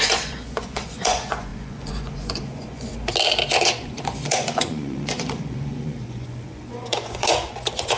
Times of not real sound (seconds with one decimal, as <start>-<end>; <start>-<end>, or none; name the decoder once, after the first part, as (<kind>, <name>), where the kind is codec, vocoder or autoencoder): 0.0-2.9 (vocoder, Vocos); 3.6-8.0